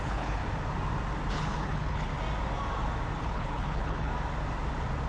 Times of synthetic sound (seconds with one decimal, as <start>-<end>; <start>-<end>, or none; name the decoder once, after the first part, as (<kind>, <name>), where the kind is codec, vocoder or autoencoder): 0.0-0.4 (codec, HILCodec); 1.3-2.1; 3.2-4.1